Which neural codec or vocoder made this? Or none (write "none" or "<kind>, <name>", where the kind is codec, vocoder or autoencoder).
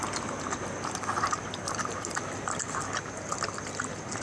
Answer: none